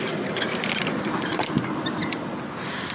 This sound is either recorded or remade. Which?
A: recorded